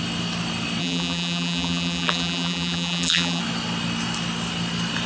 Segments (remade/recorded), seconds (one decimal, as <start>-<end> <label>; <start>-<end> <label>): 0.0-0.8 recorded; 0.8-3.4 remade; 3.4-5.1 recorded